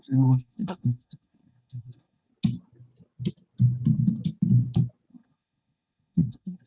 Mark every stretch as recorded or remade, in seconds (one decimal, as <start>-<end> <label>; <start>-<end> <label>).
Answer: 0.0-2.3 remade; 2.3-5.1 recorded; 5.1-6.7 remade